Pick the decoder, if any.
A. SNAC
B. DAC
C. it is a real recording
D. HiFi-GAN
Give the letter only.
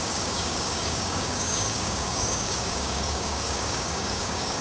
B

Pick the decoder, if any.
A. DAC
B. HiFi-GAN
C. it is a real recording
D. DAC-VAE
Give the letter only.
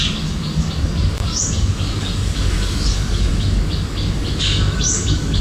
A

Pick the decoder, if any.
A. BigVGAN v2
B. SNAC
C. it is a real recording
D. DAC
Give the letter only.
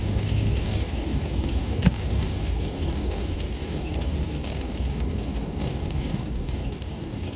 D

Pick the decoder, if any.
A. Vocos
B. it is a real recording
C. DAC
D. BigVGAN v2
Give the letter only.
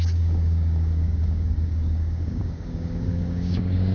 C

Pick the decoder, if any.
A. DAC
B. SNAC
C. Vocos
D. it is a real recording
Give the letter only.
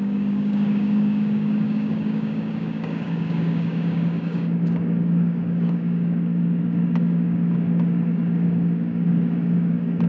A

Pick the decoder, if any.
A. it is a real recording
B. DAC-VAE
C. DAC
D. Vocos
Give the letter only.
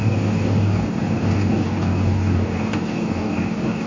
C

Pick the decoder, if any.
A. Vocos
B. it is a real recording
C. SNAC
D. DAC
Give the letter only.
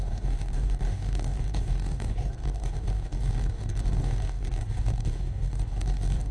D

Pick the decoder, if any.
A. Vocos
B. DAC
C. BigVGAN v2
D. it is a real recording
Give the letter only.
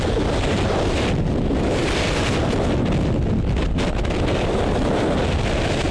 D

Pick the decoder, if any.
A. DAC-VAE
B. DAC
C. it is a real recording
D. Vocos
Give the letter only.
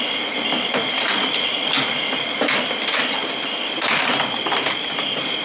C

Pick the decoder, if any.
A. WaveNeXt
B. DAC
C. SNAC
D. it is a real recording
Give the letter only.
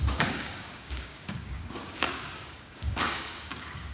B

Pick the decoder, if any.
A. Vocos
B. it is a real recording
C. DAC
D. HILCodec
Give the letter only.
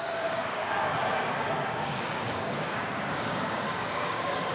C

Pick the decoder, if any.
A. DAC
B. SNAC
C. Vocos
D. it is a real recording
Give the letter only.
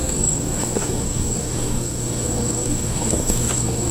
A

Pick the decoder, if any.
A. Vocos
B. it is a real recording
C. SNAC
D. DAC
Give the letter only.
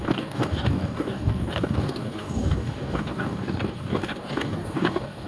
D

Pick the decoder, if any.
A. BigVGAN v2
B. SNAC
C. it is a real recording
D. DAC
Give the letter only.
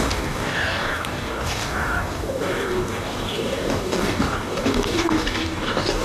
D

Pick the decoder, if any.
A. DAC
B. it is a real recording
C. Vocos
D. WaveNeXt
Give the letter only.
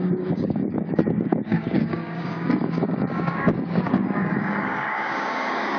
A